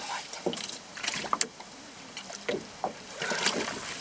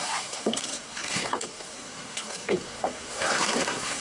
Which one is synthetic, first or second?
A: second